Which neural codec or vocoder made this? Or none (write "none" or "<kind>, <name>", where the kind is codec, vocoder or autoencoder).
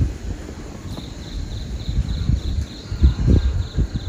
vocoder, BigVGAN v2